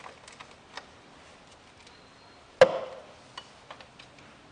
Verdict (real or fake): real